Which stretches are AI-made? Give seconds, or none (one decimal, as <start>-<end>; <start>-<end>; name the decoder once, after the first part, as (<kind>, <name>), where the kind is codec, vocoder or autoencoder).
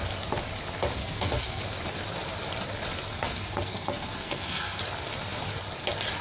1.0-1.6 (codec, SNAC); 3.1-4.8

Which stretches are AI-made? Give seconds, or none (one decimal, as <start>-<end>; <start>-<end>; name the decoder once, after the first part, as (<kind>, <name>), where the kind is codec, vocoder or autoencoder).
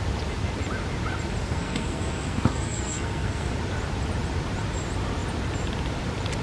1.4-3.5 (codec, SNAC)